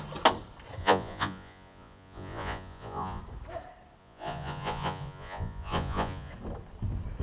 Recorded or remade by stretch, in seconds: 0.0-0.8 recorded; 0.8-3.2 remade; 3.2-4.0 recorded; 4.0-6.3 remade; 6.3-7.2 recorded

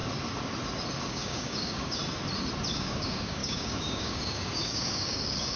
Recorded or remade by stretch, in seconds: 0.0-1.0 recorded; 1.0-2.0 remade; 2.0-2.7 recorded; 2.7-5.6 remade

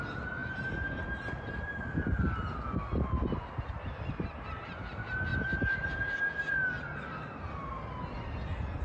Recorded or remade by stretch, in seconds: 0.0-8.8 recorded

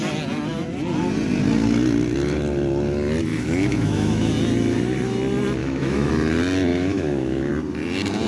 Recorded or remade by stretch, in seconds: 0.0-3.3 recorded; 3.3-4.3 remade; 4.3-5.6 recorded; 5.6-6.1 remade; 6.1-6.7 recorded; 6.7-7.5 remade; 7.5-8.3 recorded

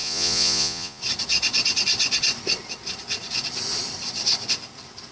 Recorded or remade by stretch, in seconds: 0.0-1.0 remade; 1.0-5.1 recorded